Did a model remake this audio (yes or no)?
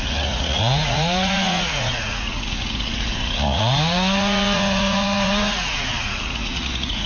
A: yes